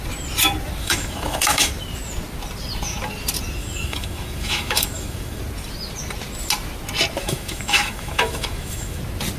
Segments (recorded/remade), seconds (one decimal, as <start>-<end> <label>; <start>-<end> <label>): 0.0-0.8 recorded; 0.8-1.7 remade; 1.7-3.6 recorded; 3.6-5.4 remade; 5.4-7.2 recorded; 7.2-9.0 remade; 9.0-9.4 recorded